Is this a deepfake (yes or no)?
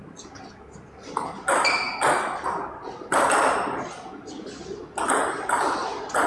no